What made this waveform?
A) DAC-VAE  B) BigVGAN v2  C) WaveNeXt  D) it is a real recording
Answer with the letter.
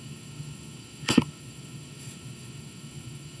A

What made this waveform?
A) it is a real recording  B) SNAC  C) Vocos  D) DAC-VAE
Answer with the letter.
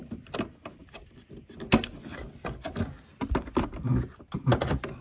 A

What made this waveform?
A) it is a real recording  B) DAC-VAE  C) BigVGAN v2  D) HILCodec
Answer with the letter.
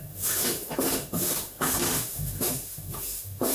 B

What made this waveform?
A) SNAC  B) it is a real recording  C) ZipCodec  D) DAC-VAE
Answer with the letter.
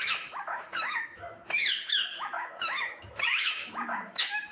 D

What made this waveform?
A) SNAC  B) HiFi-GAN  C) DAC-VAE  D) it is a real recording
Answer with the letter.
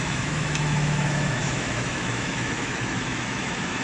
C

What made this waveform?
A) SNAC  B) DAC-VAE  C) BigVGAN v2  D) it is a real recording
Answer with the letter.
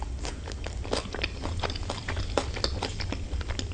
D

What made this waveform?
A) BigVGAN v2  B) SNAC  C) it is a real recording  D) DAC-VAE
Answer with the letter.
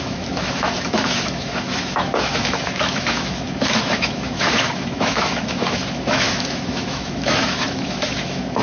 D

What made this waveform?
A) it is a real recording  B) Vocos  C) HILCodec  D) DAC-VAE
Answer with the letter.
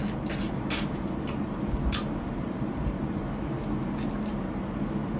A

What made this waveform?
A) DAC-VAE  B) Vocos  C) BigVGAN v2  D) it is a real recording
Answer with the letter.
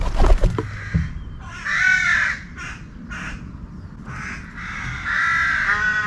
D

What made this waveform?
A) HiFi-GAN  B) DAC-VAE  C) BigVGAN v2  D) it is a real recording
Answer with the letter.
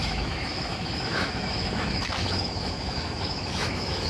B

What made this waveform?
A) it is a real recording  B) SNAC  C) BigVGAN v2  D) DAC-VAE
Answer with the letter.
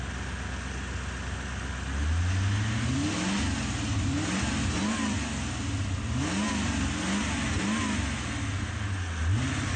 A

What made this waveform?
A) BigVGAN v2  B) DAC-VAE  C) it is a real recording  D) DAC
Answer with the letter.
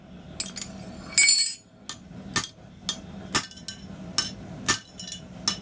C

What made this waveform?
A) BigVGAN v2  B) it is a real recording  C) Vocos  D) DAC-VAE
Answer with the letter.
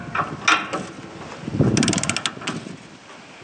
B